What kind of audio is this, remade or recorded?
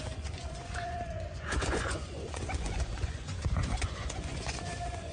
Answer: remade